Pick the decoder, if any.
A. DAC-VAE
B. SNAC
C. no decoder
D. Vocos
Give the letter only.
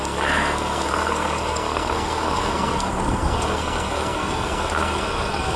B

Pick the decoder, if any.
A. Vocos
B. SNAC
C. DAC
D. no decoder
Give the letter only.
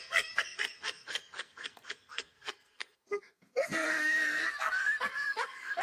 B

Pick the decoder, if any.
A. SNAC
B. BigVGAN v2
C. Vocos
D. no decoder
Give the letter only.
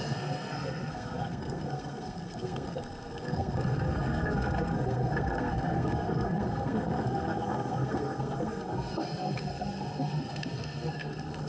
A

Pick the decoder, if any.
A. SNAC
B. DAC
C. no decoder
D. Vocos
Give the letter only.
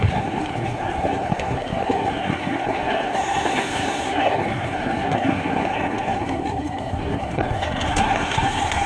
A